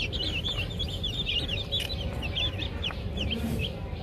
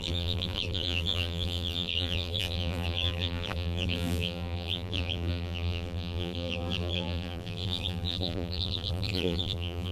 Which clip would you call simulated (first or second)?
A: second